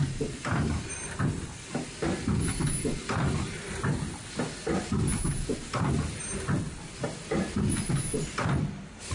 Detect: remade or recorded recorded